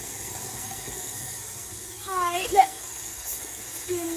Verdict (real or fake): fake